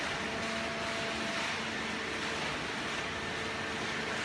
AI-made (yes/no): no